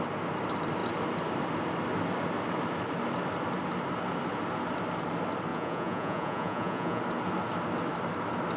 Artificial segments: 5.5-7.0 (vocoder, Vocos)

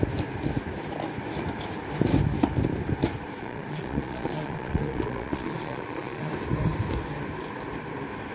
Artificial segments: 3.4-6.3 (vocoder, Vocos)

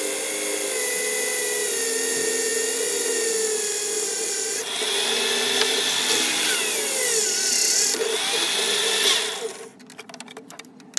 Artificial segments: none

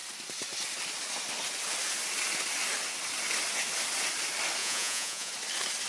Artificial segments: 4.6-5.3 (vocoder, Vocos)

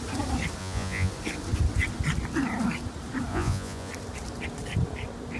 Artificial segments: 0.6-1.1 (vocoder, Vocos); 3.3-3.9

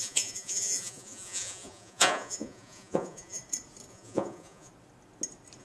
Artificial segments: 0.0-3.4 (vocoder, Vocos); 3.9-4.7

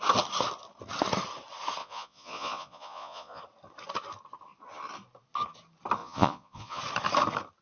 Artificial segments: 1.8-3.4 (vocoder, Vocos); 6.0-6.8

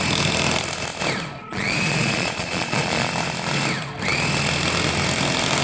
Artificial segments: 1.4-3.1 (vocoder, Vocos)